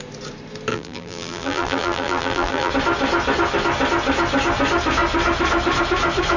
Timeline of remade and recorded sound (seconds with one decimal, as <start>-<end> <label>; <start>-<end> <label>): 0.0-0.7 recorded; 0.7-2.7 remade; 2.7-6.4 recorded